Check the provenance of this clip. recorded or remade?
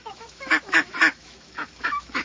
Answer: remade